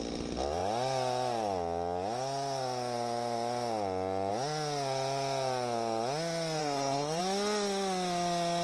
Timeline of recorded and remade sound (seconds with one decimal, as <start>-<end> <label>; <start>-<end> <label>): 0.0-6.6 recorded; 6.6-7.2 remade; 7.2-8.6 recorded